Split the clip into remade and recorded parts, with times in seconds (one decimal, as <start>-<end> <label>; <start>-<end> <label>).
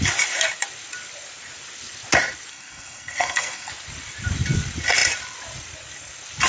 0.0-2.5 recorded; 2.5-3.7 remade; 3.7-6.5 recorded